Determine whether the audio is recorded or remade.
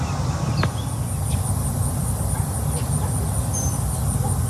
recorded